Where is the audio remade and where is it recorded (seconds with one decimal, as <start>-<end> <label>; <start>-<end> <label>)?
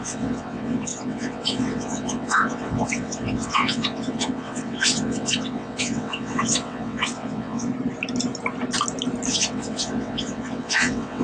0.0-7.7 remade; 7.7-9.3 recorded; 9.3-11.2 remade